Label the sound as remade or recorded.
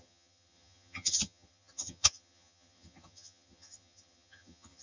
remade